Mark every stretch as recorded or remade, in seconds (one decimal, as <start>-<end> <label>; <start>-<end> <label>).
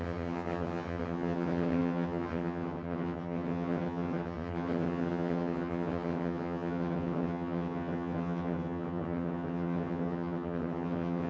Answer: 0.0-11.3 remade